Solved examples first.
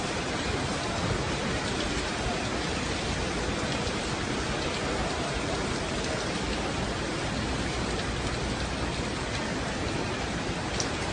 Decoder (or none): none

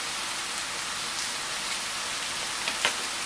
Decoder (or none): none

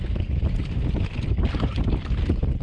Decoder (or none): none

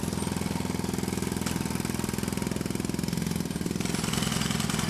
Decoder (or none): none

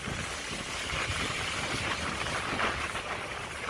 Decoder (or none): none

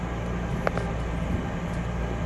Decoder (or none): none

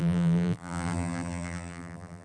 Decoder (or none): vocoder, BigVGAN v2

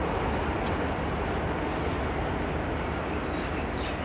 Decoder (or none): none